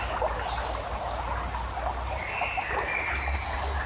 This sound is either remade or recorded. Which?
recorded